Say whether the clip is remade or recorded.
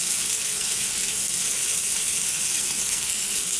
remade